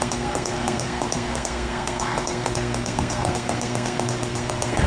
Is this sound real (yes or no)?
no